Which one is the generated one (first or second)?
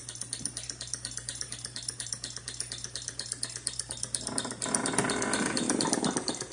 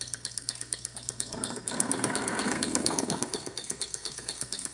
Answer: second